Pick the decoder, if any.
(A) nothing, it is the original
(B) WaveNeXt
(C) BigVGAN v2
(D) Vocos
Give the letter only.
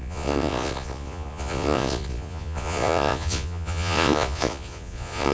D